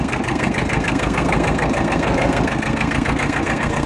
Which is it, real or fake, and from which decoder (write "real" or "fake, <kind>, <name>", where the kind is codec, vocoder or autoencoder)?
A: fake, codec, SNAC